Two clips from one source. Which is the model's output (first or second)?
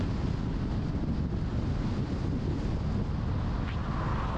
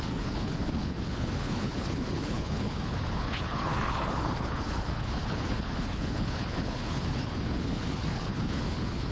second